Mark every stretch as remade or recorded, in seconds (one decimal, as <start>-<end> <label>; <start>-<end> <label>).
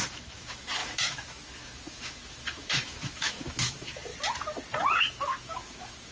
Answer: 0.0-4.1 remade; 4.1-5.0 recorded; 5.0-6.1 remade